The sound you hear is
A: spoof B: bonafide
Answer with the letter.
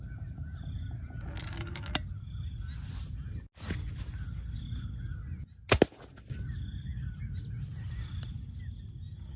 B